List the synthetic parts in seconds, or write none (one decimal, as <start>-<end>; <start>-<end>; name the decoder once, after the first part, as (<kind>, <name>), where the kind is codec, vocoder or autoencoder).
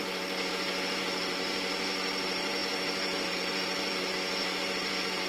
0.0-5.3 (vocoder, BigVGAN v2)